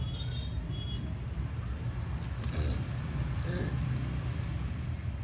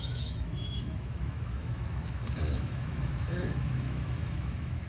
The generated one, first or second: second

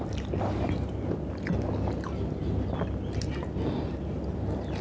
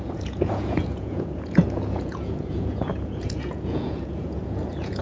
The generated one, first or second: second